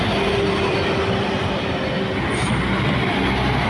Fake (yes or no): no